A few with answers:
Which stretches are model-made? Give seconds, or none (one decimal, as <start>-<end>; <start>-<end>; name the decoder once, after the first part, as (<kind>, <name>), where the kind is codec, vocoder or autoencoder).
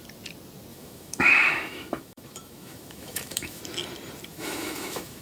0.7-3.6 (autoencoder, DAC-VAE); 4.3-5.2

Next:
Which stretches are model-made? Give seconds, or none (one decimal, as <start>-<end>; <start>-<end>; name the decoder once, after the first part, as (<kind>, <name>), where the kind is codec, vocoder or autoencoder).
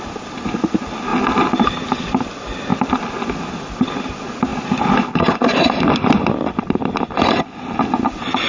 2.7-4.1 (vocoder, BigVGAN v2); 4.5-8.5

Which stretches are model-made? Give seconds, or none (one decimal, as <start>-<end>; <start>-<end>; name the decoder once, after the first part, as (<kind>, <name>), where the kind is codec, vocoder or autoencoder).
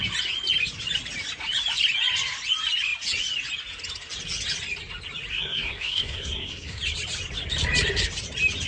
5.3-6.8 (codec, SNAC)